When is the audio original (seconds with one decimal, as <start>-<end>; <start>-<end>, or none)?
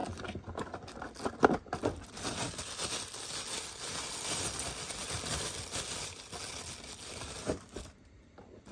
0.0-8.7